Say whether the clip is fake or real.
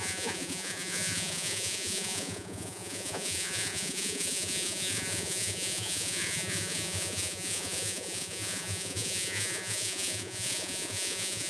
fake